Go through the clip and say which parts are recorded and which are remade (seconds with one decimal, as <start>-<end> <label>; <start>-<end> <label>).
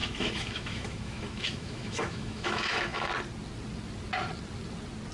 0.0-3.1 remade; 3.1-5.1 recorded